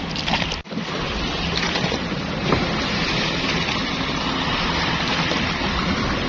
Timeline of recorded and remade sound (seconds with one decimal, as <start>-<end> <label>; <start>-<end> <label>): 0.0-6.3 remade